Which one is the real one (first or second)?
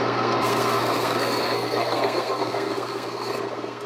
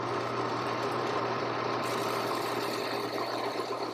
second